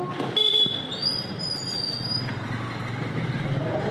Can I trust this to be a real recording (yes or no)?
yes